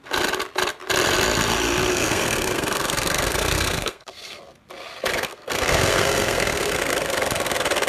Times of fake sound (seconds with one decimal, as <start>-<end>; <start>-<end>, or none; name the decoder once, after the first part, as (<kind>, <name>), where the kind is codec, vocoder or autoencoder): 1.9-4.4 (codec, SNAC); 5.1-7.9